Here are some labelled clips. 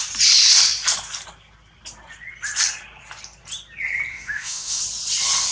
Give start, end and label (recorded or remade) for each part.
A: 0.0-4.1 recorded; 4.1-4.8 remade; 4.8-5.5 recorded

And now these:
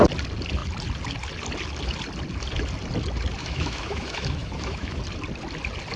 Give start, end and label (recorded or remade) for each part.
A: 0.0-3.4 recorded; 3.4-5.0 remade; 5.0-6.0 recorded